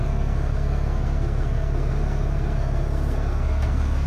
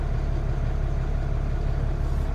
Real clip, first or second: second